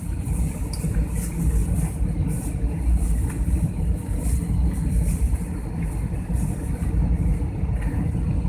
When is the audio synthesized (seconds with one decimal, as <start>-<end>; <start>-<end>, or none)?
none